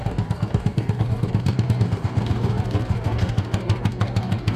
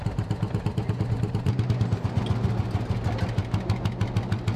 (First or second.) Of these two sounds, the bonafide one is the second